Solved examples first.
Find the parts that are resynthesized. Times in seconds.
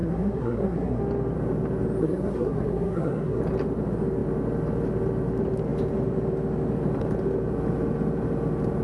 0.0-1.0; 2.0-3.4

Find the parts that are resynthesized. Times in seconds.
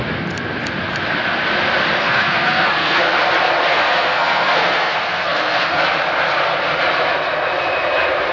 2.0-3.0; 3.7-5.8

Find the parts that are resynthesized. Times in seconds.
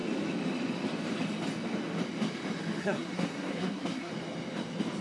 2.8-4.1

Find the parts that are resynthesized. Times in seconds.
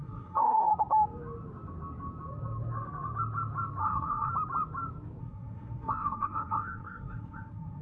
0.0-0.7; 3.8-4.3; 5.2-7.8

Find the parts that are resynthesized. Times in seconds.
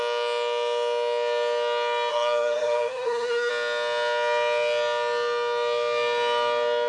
2.1-3.5